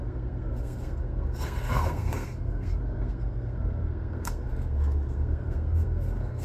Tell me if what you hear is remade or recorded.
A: remade